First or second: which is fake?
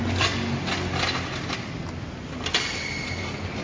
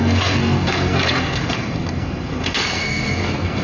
second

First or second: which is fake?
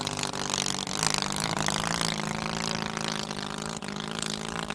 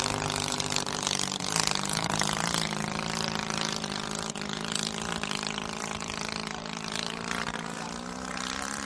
second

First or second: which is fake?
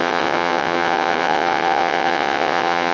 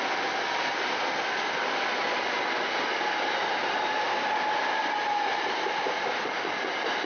first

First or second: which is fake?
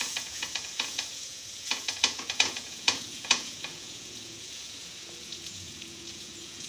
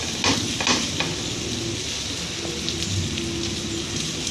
first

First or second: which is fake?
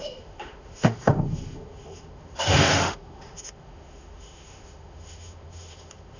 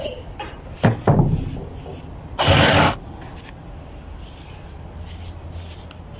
first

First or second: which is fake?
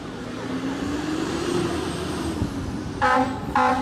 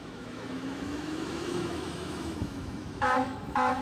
second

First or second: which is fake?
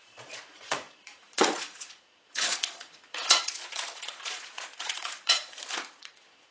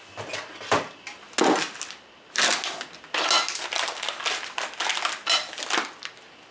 first